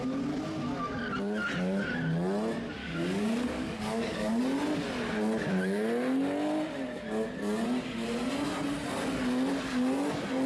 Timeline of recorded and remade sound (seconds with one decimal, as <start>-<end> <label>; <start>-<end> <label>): 0.0-2.8 recorded; 2.8-4.4 remade; 4.4-10.5 recorded